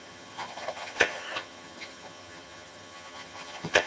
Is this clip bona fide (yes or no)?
no